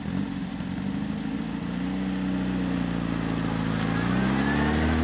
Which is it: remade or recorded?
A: recorded